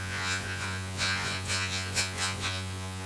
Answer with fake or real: fake